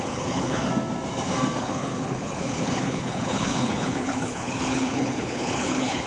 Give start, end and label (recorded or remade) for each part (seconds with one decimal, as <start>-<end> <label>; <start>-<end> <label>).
0.0-0.7 remade; 0.7-1.6 recorded; 1.6-6.1 remade